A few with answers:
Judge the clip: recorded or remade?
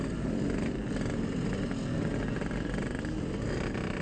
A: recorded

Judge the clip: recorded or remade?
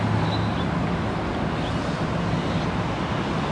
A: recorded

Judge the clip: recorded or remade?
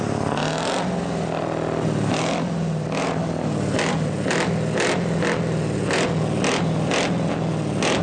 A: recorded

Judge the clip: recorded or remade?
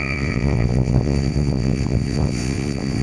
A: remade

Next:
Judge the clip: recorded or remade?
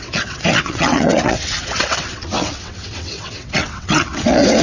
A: remade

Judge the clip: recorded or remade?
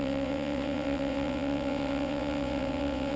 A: remade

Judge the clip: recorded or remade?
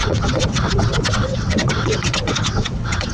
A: remade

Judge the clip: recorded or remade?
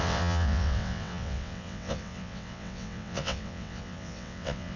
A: remade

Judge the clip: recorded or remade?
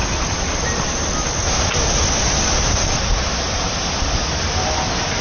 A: recorded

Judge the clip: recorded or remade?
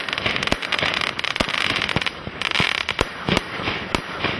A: recorded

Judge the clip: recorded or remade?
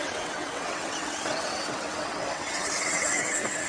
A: remade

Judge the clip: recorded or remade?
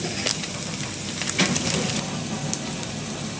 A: recorded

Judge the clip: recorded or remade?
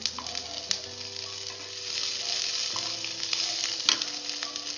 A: recorded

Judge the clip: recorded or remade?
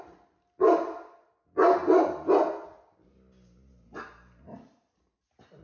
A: recorded